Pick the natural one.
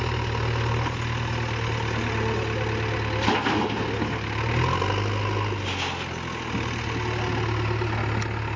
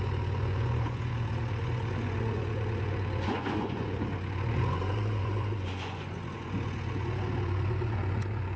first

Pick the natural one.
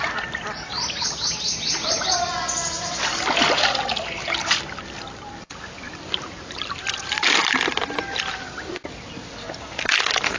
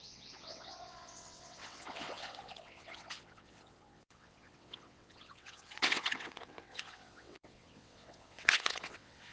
first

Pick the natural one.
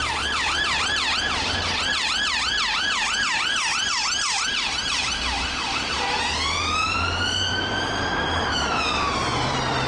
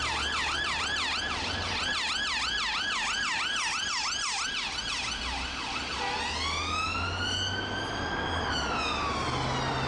second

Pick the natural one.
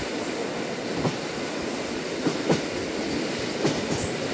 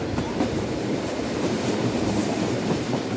first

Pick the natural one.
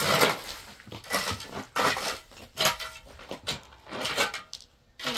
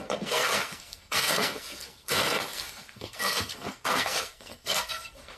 first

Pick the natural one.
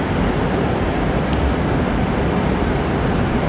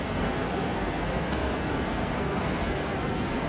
first